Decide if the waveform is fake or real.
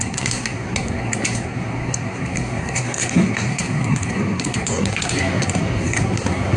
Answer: fake